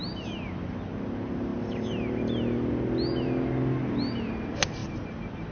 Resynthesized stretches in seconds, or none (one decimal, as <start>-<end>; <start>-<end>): 4.8-5.5

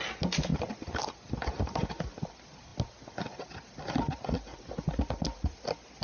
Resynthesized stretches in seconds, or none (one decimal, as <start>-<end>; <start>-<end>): none

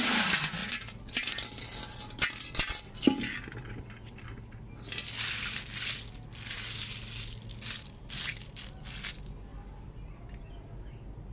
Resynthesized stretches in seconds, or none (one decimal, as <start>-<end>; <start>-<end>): none

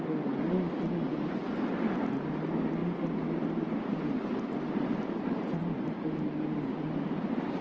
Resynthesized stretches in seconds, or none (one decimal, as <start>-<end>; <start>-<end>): 0.0-1.4; 2.1-7.6

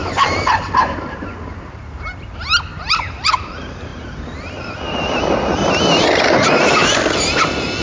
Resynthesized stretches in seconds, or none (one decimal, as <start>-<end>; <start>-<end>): 0.0-0.8; 2.7-3.3; 3.9-5.2

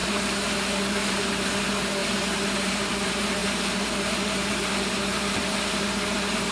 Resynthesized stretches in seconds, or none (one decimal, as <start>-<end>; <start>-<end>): 0.0-6.5

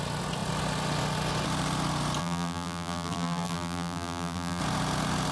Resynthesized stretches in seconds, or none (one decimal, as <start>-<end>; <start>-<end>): 2.2-4.6